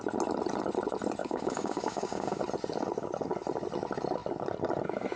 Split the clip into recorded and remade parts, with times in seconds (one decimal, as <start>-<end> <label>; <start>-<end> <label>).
0.0-1.2 recorded; 1.2-2.4 remade; 2.4-5.2 recorded